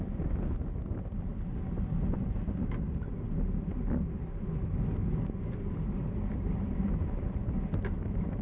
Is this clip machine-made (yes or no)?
no